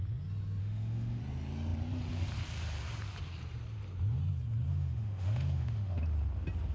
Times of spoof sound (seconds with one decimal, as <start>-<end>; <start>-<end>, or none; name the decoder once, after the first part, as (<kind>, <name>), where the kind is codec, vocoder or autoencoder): 0.6-1.2 (autoencoder, DAC-VAE); 4.7-6.0